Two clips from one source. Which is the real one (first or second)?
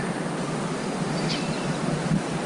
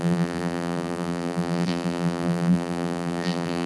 first